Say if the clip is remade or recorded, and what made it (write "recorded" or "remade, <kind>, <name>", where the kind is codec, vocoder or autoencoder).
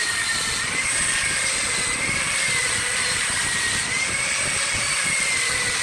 recorded